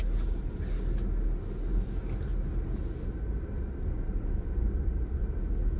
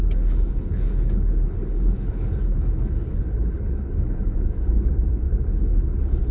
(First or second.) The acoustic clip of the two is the first